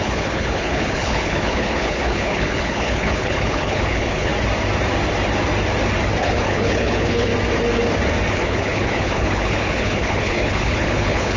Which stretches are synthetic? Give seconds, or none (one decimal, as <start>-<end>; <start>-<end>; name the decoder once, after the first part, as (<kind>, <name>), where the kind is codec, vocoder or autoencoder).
0.0-4.3 (codec, HILCodec); 6.2-7.3; 8.3-11.4